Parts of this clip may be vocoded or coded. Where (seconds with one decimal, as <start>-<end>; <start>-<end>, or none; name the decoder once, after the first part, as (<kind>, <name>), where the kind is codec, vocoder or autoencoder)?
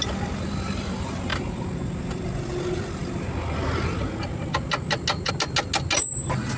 none